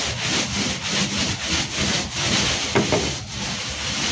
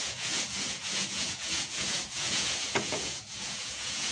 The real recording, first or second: first